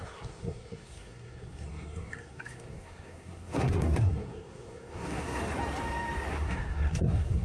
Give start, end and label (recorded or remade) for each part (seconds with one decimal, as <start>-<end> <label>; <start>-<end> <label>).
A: 0.0-5.4 remade; 5.4-6.3 recorded; 6.3-7.4 remade